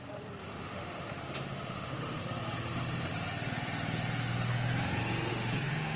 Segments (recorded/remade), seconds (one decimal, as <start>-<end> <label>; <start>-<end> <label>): 0.0-0.4 recorded; 0.4-2.2 remade; 2.2-5.3 recorded; 5.3-6.0 remade